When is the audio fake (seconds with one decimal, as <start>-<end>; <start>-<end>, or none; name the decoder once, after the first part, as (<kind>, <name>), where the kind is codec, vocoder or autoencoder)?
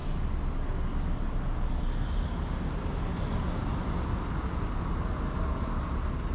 none